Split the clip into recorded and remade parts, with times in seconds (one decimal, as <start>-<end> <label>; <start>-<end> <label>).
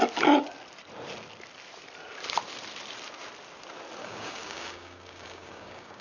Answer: 0.0-4.0 recorded; 4.0-6.0 remade